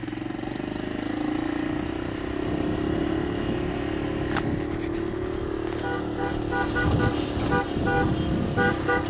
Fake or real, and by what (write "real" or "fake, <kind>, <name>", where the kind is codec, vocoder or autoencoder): real